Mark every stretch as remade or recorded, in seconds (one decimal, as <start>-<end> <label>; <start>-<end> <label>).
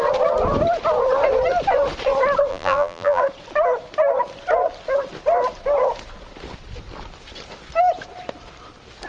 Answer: 0.0-2.5 recorded; 2.5-3.2 remade; 3.2-9.1 recorded